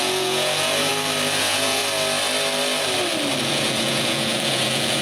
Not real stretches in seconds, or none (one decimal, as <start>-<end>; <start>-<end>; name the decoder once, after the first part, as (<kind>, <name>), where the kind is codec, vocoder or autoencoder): 0.0-0.9 (vocoder, Vocos); 1.4-1.8; 3.4-5.0